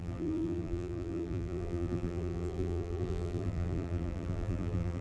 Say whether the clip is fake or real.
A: fake